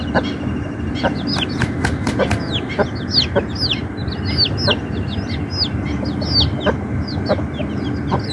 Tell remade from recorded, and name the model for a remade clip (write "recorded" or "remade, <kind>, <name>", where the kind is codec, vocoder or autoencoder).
recorded